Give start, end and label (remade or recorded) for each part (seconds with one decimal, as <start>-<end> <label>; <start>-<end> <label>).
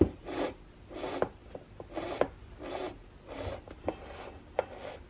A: 0.0-5.1 recorded